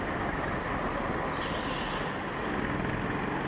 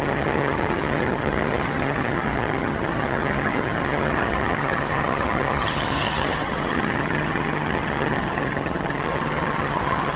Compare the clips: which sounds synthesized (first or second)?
second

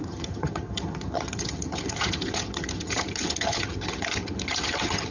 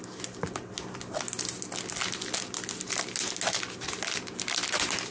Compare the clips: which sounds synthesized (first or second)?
first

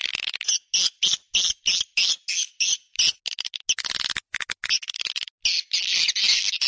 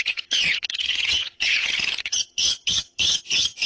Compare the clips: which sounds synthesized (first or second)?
second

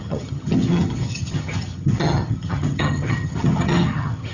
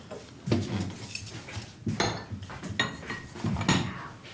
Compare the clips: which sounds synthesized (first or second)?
first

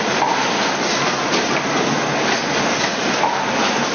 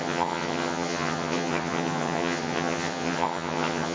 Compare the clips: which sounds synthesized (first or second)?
second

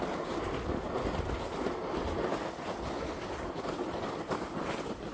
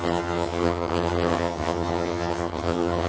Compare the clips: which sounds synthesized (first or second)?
second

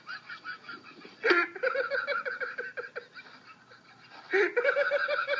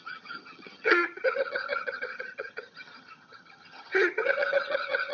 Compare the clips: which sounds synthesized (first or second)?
second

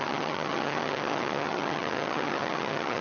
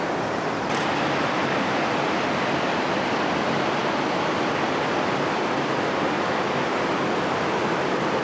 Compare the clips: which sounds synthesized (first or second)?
first